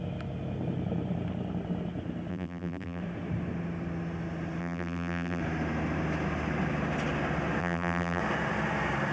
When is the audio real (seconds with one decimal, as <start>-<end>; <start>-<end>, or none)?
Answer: 0.0-2.3; 3.0-4.6; 5.4-7.6; 8.2-9.1